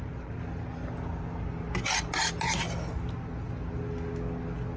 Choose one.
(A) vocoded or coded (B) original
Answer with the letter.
B